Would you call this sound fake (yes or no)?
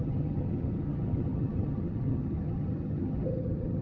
yes